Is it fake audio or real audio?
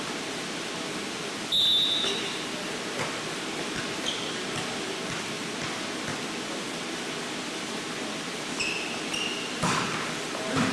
real